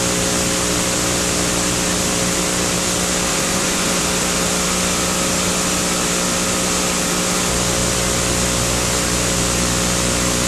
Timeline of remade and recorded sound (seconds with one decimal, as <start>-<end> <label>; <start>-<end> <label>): 0.0-3.3 recorded; 3.3-4.0 remade; 4.0-10.5 recorded